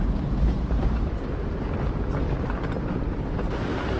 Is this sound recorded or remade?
recorded